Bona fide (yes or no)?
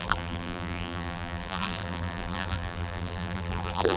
no